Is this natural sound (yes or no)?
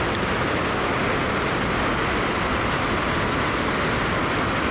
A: yes